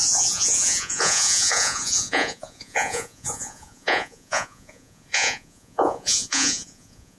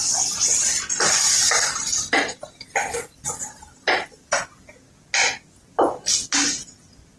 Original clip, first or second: second